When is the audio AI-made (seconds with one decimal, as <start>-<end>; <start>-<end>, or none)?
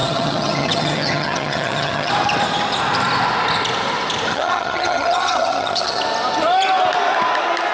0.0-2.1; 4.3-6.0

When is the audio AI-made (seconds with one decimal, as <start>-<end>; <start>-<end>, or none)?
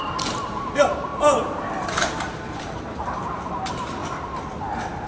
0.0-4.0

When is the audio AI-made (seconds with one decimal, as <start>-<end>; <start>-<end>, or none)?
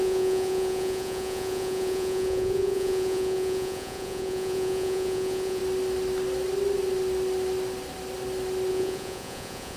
0.0-5.6; 8.7-9.8